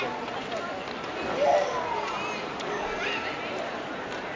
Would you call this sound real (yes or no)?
yes